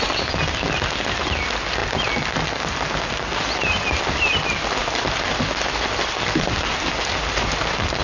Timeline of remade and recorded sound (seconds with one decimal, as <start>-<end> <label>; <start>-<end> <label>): 0.0-8.0 recorded